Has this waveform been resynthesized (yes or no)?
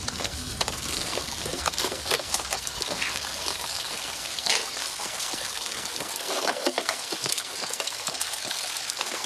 yes